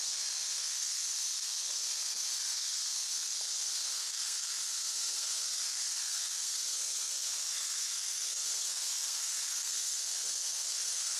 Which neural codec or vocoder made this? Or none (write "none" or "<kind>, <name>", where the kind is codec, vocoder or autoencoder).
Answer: codec, SNAC